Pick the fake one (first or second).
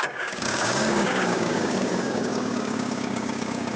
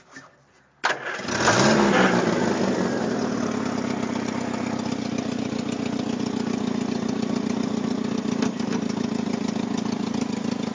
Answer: first